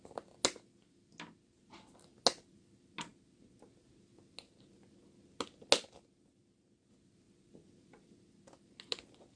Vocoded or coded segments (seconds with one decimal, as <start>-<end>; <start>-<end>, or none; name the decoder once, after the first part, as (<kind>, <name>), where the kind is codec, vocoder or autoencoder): none